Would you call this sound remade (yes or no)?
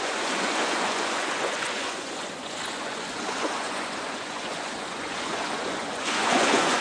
yes